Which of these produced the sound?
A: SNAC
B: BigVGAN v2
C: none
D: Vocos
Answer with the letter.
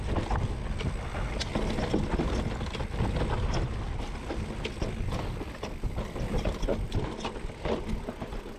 C